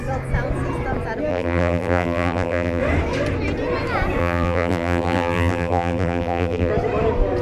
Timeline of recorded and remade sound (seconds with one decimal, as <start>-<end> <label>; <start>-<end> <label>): 0.0-1.3 recorded; 1.3-2.8 remade; 2.8-4.2 recorded; 4.2-6.7 remade; 6.7-7.4 recorded